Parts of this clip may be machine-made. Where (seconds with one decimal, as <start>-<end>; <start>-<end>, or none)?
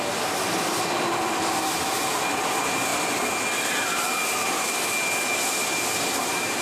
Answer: none